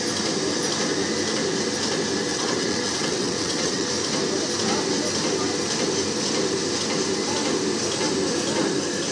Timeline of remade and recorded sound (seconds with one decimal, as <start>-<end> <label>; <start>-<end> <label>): 0.0-2.3 recorded; 2.3-3.9 remade; 3.9-9.1 recorded